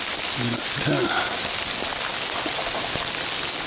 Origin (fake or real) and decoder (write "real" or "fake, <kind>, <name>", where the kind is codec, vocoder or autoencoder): real